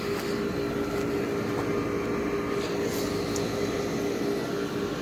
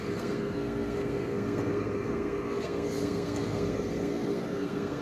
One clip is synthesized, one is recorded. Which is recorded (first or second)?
first